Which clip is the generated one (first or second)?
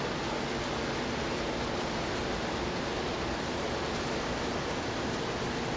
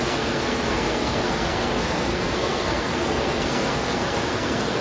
second